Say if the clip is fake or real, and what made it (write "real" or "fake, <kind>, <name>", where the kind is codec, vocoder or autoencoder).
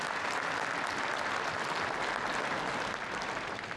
real